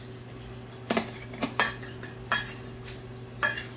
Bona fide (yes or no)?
yes